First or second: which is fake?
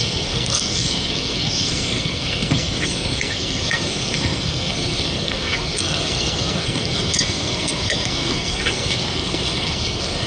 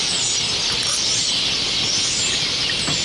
first